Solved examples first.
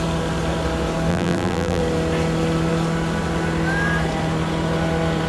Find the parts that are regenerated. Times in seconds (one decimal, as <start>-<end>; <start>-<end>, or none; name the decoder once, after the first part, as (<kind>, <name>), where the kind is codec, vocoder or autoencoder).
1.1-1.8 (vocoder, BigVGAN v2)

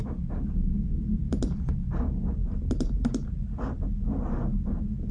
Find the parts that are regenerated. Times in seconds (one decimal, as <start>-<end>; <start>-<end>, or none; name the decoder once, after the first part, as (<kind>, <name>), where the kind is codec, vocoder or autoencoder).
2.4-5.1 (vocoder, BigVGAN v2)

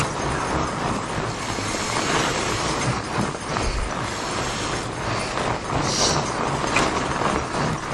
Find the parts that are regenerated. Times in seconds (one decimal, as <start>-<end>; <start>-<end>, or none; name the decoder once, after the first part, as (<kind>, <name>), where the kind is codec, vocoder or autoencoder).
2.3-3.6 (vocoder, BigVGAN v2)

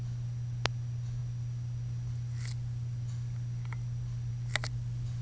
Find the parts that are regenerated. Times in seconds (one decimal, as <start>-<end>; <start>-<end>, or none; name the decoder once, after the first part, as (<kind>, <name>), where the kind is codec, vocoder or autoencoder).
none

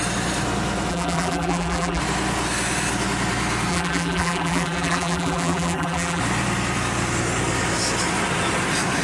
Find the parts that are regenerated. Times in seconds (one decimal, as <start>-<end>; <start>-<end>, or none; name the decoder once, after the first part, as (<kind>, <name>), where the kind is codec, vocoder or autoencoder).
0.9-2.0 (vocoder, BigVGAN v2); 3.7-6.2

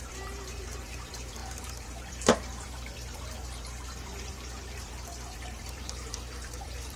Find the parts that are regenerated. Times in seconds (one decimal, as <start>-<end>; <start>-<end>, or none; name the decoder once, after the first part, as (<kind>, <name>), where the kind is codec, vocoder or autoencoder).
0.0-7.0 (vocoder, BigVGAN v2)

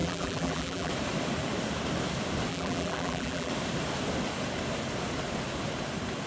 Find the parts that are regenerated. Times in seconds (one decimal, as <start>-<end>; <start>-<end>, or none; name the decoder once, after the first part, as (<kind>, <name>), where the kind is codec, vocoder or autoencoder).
0.0-0.9 (vocoder, BigVGAN v2); 2.5-3.5

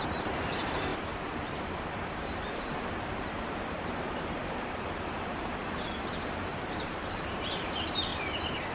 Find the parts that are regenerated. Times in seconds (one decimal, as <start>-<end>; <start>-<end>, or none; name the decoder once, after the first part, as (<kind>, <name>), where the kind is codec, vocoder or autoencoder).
0.0-4.4 (vocoder, BigVGAN v2); 5.1-8.1